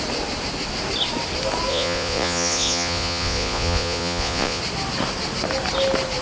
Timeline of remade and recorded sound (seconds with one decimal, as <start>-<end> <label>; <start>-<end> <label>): 0.0-1.7 recorded; 1.7-4.6 remade; 4.6-6.2 recorded